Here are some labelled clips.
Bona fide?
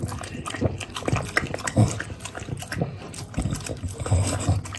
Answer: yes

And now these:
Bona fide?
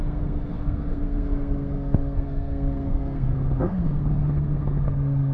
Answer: no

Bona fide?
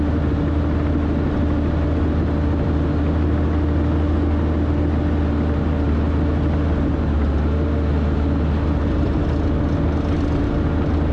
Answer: yes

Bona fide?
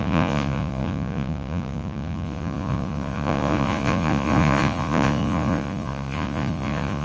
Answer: no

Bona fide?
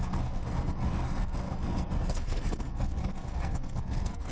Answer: no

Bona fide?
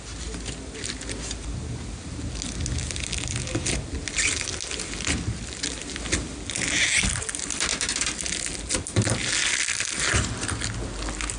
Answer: yes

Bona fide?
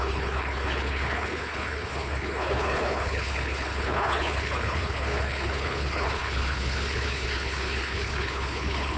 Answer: no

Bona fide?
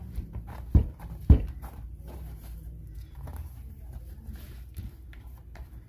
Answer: no